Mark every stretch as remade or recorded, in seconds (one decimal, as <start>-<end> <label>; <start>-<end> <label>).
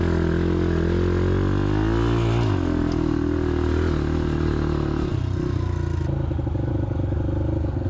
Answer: 0.0-7.9 recorded